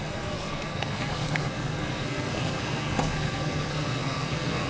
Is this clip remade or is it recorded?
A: remade